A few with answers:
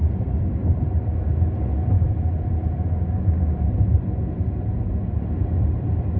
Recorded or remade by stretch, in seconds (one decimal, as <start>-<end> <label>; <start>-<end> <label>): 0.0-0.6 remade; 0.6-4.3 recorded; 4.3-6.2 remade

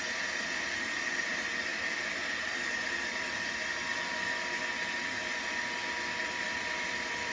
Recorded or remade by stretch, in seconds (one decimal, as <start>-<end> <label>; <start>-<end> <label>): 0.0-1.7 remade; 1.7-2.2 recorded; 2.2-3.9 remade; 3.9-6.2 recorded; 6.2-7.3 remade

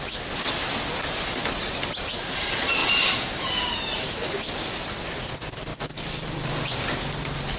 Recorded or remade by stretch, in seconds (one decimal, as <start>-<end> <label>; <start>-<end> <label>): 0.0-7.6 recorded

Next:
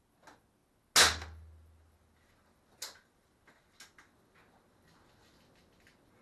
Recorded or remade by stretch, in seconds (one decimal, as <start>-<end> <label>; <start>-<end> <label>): 0.0-6.2 recorded